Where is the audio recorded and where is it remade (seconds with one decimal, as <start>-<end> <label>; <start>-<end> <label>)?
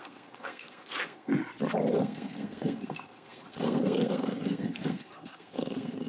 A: 0.0-1.3 remade; 1.3-1.9 recorded; 1.9-6.1 remade